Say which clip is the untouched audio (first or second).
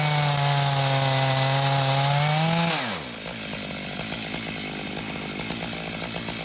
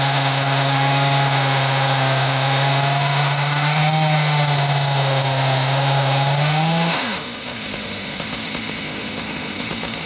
first